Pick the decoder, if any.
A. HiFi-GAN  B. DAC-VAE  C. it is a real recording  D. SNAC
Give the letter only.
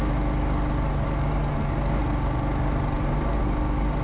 C